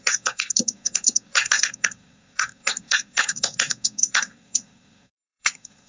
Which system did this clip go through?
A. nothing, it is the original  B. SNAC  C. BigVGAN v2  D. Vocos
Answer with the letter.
B